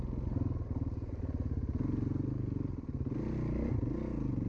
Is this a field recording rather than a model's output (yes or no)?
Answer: yes